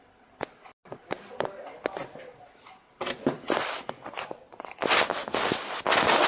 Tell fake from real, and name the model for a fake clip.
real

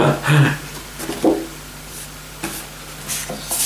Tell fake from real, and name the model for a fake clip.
real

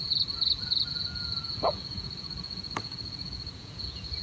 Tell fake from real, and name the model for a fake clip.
fake, vocoder, Vocos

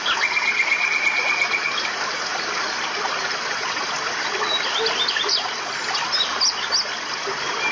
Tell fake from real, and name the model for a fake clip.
real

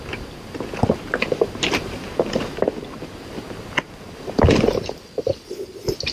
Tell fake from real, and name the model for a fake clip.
real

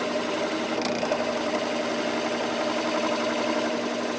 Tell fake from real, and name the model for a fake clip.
real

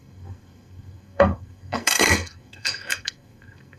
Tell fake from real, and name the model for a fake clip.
fake, codec, SNAC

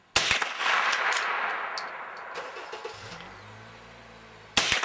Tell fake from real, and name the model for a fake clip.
real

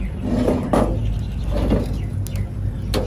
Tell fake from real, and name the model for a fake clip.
real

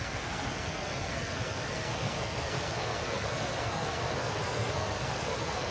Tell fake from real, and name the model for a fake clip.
fake, codec, SNAC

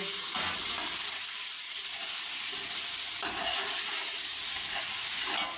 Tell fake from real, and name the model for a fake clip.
real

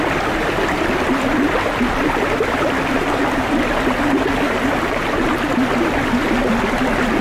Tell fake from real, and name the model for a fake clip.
real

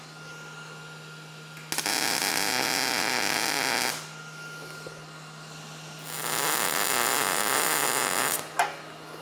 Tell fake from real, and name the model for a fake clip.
real